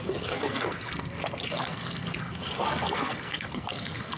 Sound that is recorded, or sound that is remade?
remade